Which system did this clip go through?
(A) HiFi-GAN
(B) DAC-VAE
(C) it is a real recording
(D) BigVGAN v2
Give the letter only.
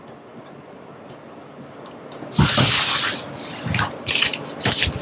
C